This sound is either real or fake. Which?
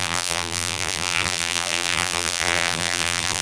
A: fake